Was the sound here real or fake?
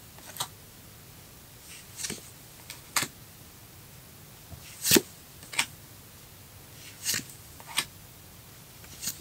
real